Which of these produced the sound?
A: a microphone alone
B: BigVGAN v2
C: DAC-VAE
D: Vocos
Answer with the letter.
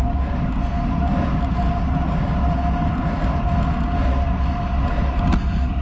A